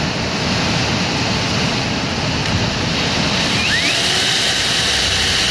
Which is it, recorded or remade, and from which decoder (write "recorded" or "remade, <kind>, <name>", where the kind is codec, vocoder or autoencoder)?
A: remade, vocoder, BigVGAN v2